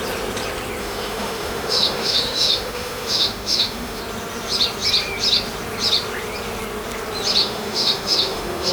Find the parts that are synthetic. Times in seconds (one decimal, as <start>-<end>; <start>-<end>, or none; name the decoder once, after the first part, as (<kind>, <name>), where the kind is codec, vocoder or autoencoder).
0.8-4.0 (autoencoder, DAC-VAE); 7.4-8.7